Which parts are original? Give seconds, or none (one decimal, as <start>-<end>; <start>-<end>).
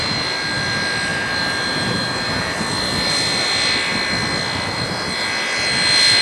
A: 0.0-1.1; 2.1-6.2